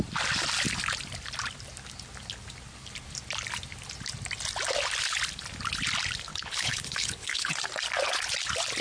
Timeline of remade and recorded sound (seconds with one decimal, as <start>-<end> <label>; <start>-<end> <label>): 0.0-6.3 recorded; 6.3-7.5 remade; 7.5-8.8 recorded